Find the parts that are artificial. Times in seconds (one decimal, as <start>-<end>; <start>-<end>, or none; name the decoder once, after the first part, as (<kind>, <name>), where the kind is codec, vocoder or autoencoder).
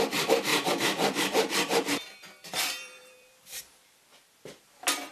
0.5-3.6 (vocoder, BigVGAN v2)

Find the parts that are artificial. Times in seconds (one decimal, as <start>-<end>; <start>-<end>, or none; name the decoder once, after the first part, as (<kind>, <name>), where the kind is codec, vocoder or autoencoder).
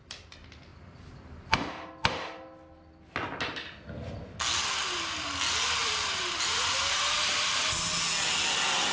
5.8-7.7 (vocoder, BigVGAN v2)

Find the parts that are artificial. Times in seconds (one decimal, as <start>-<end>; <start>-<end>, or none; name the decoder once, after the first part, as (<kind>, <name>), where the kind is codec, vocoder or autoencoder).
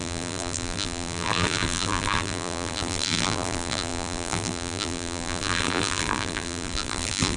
0.0-7.4 (vocoder, BigVGAN v2)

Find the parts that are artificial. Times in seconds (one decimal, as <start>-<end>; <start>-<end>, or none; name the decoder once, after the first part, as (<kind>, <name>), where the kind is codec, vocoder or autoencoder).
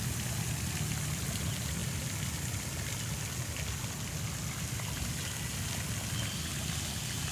none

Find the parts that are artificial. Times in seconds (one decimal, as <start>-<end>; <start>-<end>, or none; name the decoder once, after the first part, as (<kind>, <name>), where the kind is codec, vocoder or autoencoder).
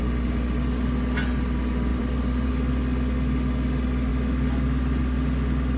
1.9-2.5 (vocoder, BigVGAN v2)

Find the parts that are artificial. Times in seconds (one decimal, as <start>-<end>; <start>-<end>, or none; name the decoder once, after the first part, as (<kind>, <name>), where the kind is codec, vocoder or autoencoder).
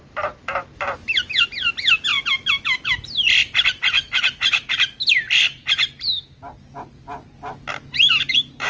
none